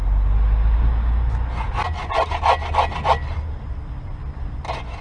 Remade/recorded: recorded